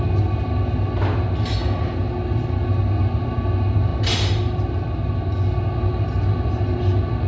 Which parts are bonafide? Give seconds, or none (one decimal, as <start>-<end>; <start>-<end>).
0.0-7.3

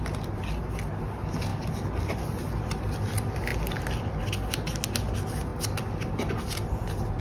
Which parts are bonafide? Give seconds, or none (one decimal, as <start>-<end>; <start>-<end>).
0.0-7.2

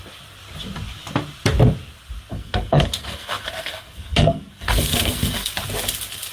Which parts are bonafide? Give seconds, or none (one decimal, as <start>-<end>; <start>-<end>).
0.0-2.3; 5.5-6.3

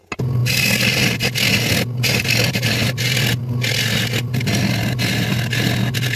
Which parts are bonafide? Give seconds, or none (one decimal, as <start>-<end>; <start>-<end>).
0.0-6.2